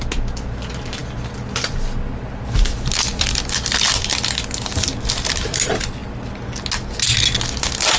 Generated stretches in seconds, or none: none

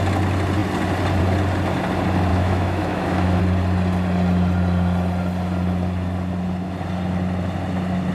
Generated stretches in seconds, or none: 2.3-3.4

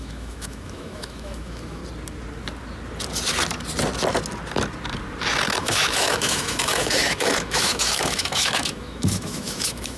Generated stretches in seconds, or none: 0.0-1.8; 5.6-10.0

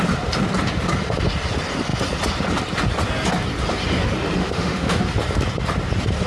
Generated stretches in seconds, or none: 4.4-5.0

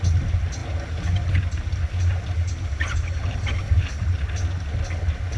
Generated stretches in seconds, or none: none